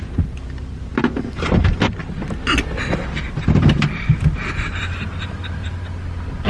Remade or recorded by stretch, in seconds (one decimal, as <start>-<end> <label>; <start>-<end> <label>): 0.0-6.5 recorded